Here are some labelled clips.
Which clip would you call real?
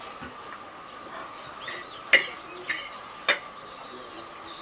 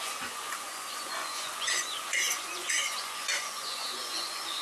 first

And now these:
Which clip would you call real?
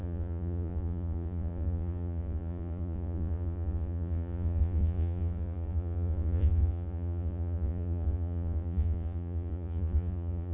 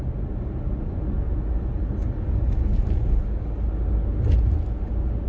second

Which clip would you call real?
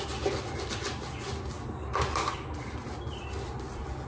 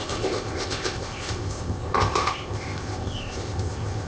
first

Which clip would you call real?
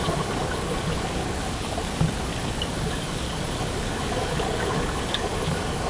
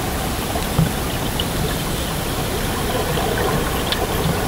second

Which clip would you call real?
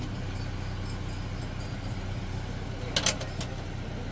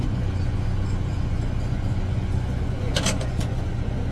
first